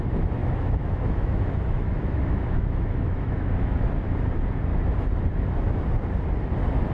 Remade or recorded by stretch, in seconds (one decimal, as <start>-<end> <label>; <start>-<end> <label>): 0.0-0.4 recorded; 0.4-3.9 remade; 3.9-6.9 recorded